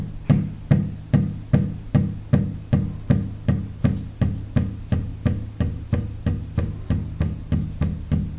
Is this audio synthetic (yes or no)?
no